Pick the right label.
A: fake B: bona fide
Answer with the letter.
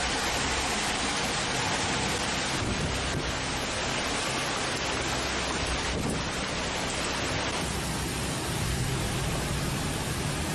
B